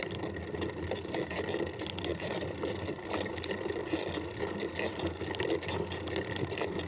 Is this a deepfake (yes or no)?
no